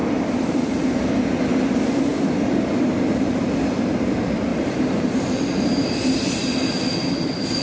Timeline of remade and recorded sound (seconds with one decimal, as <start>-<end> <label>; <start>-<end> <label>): 0.0-1.1 remade; 1.1-4.5 recorded; 4.5-6.3 remade; 6.3-7.6 recorded